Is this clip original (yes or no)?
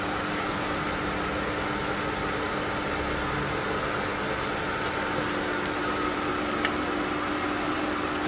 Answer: yes